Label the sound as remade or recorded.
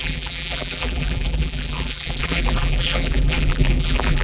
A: remade